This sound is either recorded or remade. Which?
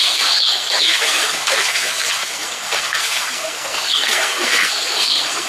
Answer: remade